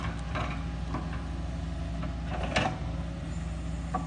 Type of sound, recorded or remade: recorded